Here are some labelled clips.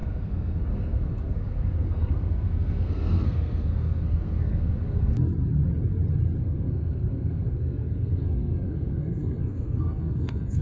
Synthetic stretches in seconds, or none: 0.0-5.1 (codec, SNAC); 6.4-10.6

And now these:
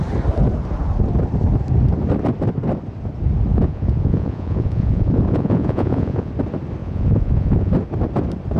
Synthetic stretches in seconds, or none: 3.5-6.3 (vocoder, Vocos); 6.8-7.7

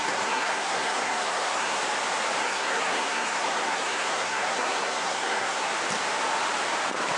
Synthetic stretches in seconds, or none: 0.0-1.8 (codec, SNAC); 2.4-5.7